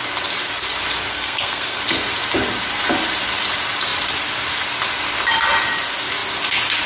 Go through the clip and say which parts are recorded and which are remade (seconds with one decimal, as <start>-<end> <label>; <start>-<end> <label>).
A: 0.0-1.1 recorded; 1.1-1.8 remade; 1.8-6.9 recorded